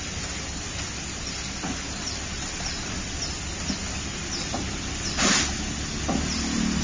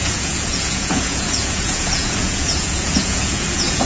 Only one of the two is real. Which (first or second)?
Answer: first